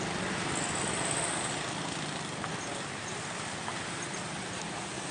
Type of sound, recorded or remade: recorded